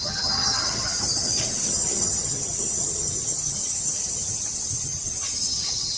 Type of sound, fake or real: fake